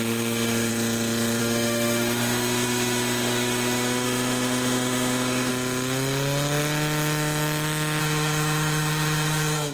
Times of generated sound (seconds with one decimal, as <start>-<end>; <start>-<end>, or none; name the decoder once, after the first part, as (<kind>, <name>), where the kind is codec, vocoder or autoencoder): 0.0-0.7 (autoencoder, DAC-VAE); 1.4-5.5; 8.0-9.7